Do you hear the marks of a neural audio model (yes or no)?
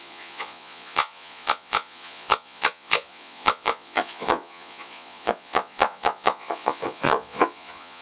yes